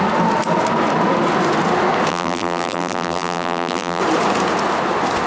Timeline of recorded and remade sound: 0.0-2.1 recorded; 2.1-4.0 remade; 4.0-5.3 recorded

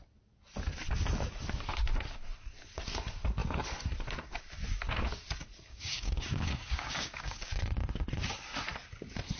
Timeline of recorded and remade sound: 0.0-5.7 recorded; 5.7-7.5 remade; 7.5-9.4 recorded

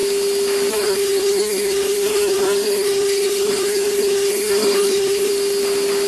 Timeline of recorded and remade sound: 0.0-0.7 recorded; 0.7-5.3 remade; 5.3-6.1 recorded

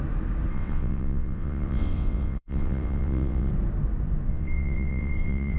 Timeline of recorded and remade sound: 0.0-0.5 recorded; 0.5-3.5 remade; 3.5-4.3 recorded; 4.3-5.6 remade

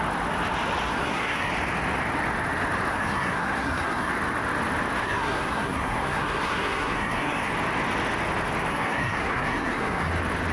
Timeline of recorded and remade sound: 0.0-0.9 recorded; 0.9-1.5 remade; 1.5-2.9 recorded; 2.9-4.1 remade; 4.1-5.0 recorded; 5.0-7.5 remade; 7.5-8.7 recorded; 8.7-10.1 remade; 10.1-10.5 recorded

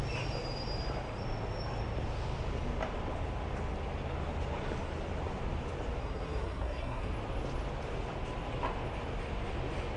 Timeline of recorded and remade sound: 0.0-6.0 recorded; 6.0-7.1 remade; 7.1-10.0 recorded

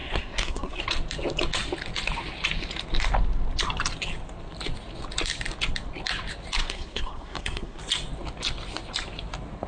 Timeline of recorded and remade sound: 0.0-0.8 remade; 0.8-6.6 recorded; 6.6-7.8 remade; 7.8-9.7 recorded